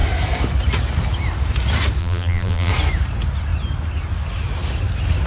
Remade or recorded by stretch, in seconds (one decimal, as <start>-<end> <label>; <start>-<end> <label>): 0.0-2.0 recorded; 2.0-2.7 remade; 2.7-5.3 recorded